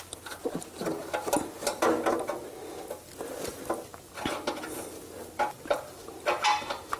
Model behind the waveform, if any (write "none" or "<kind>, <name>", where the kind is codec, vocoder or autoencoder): none